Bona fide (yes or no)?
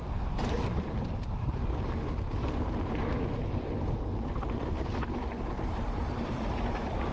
no